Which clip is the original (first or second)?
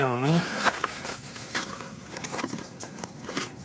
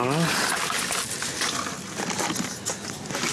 second